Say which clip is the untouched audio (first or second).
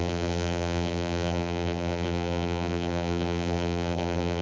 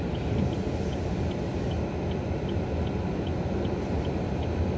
second